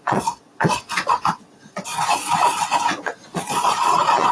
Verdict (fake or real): fake